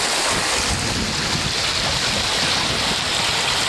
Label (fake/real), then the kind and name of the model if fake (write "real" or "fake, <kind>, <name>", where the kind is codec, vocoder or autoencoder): real